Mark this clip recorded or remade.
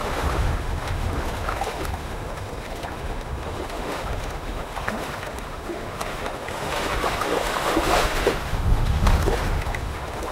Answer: remade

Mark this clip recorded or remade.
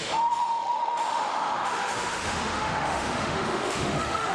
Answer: remade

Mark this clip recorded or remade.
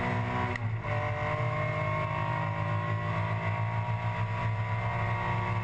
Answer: recorded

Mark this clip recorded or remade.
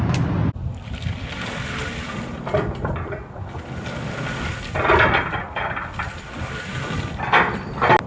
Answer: recorded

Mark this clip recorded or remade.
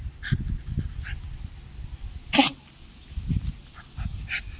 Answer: recorded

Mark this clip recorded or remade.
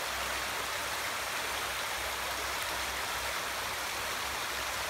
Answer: recorded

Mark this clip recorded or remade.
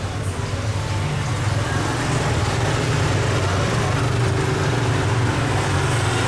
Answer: recorded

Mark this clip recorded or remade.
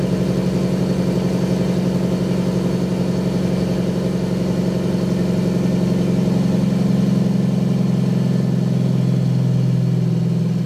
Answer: recorded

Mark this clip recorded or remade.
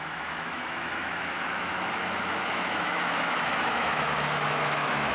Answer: remade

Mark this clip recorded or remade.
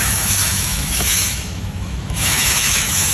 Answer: remade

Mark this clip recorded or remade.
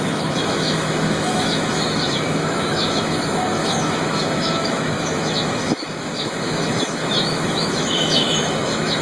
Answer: remade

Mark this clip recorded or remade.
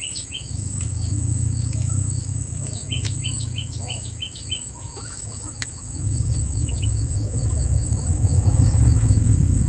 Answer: remade